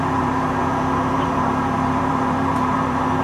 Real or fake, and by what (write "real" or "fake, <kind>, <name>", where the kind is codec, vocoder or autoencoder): fake, vocoder, BigVGAN v2